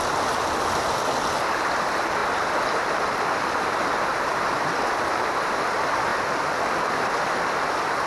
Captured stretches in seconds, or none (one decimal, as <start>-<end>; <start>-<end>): 0.0-2.2; 4.4-8.1